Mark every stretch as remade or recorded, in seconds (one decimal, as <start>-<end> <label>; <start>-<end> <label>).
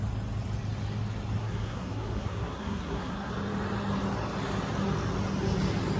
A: 0.0-1.4 recorded; 1.4-3.3 remade; 3.3-6.0 recorded